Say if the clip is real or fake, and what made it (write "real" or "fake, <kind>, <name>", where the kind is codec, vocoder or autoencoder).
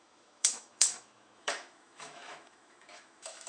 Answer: fake, autoencoder, DAC-VAE